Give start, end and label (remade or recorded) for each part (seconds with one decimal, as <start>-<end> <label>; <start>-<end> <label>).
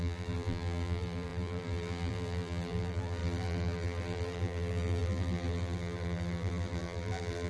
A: 0.0-7.5 remade